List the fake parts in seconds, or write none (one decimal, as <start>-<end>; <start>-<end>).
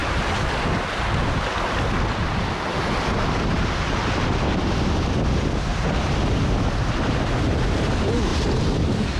5.7-6.4